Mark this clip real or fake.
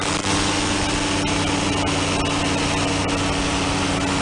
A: real